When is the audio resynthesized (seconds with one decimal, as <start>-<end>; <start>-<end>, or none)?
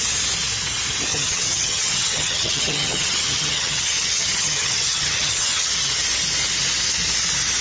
1.1-5.7